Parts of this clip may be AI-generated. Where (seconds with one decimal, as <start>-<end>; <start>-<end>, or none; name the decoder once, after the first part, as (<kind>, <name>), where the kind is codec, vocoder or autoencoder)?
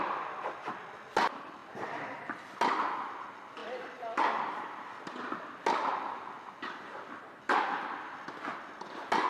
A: 1.6-2.5 (vocoder, BigVGAN v2)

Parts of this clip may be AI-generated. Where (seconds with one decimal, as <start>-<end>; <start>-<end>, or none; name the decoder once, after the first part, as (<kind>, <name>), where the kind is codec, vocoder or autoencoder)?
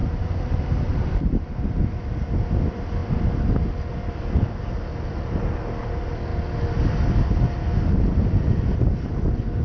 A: 0.0-1.5 (vocoder, BigVGAN v2)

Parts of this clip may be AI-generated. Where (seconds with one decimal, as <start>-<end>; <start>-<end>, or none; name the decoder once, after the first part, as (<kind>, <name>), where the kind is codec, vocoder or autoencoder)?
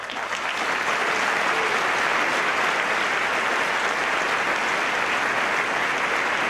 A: none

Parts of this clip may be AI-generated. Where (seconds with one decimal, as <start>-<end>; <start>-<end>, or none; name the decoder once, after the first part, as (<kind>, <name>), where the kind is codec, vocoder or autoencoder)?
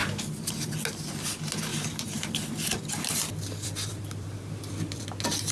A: 1.7-5.0 (vocoder, BigVGAN v2)